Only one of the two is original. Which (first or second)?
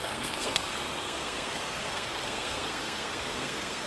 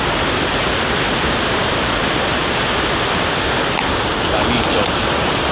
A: second